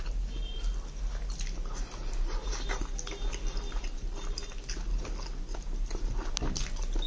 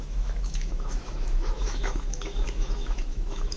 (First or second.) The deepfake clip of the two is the second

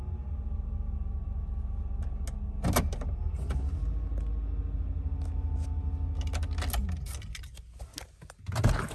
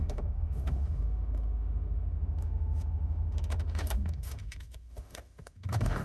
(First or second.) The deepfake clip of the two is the second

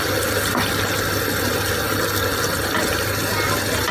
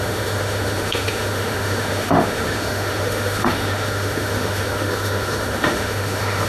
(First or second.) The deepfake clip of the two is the second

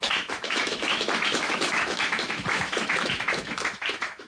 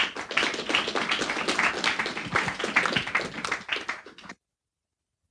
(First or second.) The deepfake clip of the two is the first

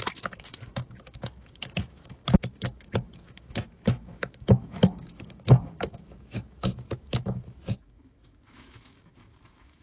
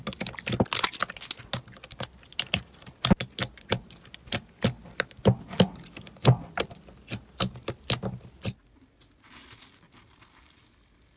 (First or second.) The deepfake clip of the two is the first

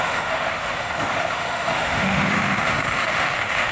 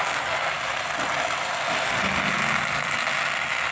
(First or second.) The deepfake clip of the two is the first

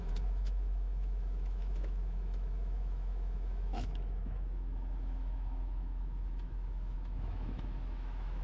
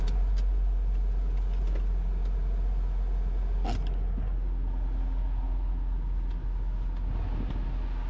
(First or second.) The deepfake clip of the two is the first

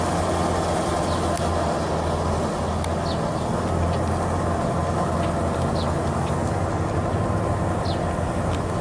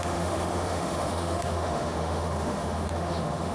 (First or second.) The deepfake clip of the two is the second